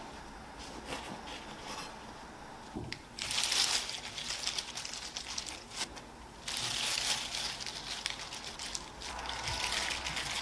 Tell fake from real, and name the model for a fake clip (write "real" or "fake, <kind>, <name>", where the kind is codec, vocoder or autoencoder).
real